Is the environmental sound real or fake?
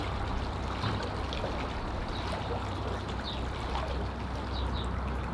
real